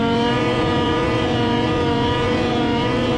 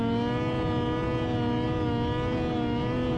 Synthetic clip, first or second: first